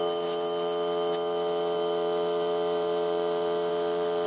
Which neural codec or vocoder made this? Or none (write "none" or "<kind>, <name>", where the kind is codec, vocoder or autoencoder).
vocoder, BigVGAN v2